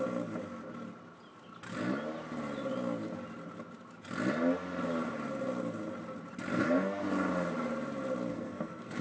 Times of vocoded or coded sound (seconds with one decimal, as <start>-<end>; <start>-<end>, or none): 6.5-7.0; 8.3-9.0